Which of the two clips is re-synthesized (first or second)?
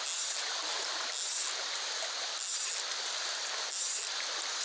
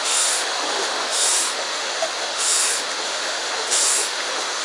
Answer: second